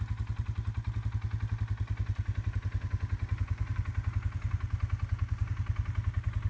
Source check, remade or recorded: recorded